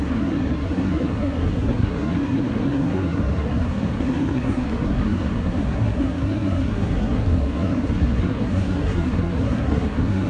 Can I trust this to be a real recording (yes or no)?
no